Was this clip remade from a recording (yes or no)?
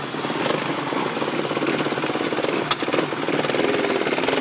no